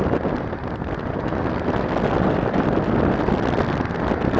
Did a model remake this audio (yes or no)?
no